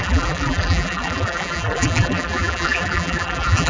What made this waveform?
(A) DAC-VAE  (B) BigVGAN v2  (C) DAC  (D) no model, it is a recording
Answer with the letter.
B